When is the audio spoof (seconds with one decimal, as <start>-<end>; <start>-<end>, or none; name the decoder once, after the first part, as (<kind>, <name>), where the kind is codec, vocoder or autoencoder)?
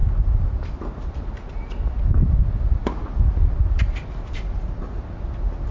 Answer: 0.0-1.7 (vocoder, BigVGAN v2); 2.8-4.8